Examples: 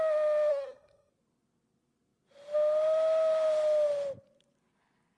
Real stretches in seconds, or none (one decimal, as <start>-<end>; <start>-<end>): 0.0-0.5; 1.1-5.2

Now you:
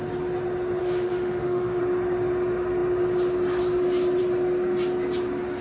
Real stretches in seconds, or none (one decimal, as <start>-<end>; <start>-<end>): 0.0-0.8; 1.8-5.6

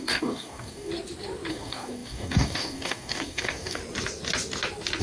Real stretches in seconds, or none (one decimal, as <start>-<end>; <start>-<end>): 0.9-1.5; 3.8-5.0

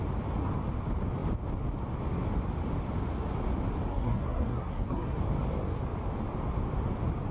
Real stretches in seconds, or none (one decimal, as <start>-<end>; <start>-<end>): 0.0-3.9; 5.2-7.3

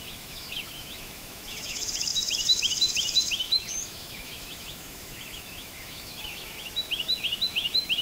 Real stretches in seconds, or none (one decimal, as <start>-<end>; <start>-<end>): none

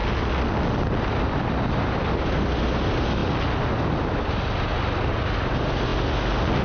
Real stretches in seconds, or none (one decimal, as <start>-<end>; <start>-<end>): 0.0-6.6

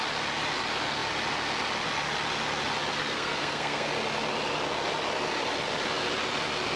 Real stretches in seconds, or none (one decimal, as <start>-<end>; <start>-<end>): 0.0-3.0; 3.9-6.8

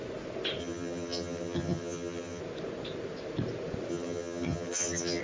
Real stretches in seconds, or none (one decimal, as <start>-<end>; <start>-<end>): 0.0-0.6; 2.4-3.9